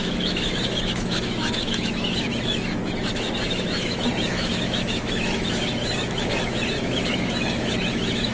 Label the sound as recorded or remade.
remade